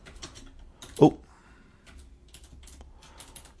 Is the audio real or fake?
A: real